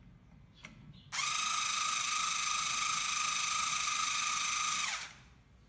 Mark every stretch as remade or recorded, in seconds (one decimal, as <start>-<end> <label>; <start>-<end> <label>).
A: 0.0-3.7 recorded; 3.7-4.3 remade; 4.3-5.7 recorded